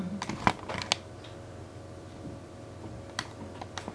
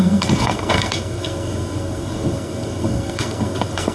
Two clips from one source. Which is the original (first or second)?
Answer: first